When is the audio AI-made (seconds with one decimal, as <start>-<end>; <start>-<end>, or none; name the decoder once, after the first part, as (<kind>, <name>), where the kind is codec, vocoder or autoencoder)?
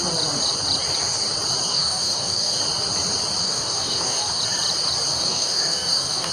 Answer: 1.7-2.6 (codec, DAC); 3.4-4.4; 5.1-6.3